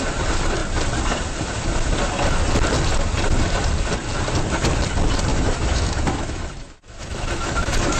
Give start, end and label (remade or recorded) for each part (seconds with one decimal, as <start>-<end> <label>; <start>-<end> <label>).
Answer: 0.0-5.3 recorded; 5.3-8.0 remade